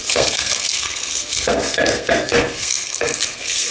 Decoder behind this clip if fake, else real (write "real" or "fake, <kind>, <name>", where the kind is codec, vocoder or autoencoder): fake, codec, SNAC